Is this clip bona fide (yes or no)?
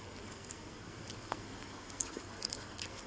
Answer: no